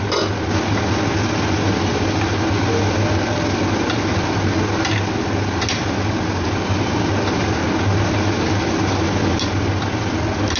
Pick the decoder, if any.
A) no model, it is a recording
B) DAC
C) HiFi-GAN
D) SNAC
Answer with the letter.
A